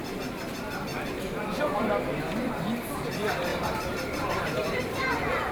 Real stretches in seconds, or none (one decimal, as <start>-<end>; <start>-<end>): 0.0-0.9; 1.9-3.5; 4.8-5.5